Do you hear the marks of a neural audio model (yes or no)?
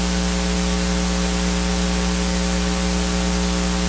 no